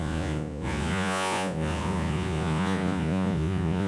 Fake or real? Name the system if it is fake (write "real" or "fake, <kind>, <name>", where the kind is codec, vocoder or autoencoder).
fake, vocoder, Vocos